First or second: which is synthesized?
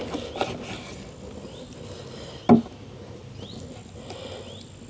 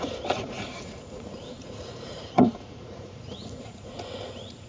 second